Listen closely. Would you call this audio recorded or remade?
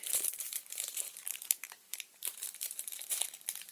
remade